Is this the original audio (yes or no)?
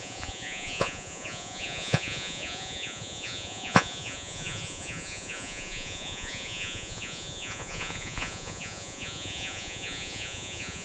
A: no